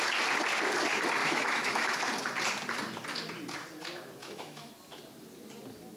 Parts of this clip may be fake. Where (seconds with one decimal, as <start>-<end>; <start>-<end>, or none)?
1.2-2.0; 4.2-4.7